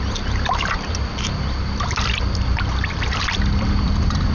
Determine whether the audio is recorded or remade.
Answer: remade